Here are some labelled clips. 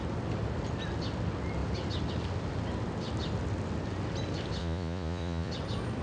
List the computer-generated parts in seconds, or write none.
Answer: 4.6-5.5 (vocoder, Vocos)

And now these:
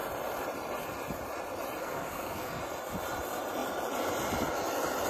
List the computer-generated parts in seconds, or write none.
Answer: 1.8-2.6 (codec, SNAC)

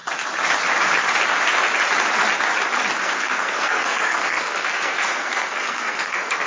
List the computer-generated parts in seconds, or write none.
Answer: 3.0-6.5 (codec, SNAC)

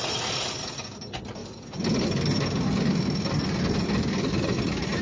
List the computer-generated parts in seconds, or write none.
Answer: none

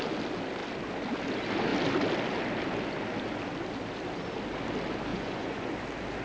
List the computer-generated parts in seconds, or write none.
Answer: 5.1-5.7 (vocoder, Vocos)